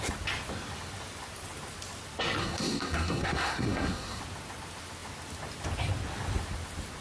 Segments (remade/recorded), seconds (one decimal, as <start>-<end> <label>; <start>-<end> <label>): 0.0-2.4 recorded; 2.4-4.2 remade; 4.2-7.0 recorded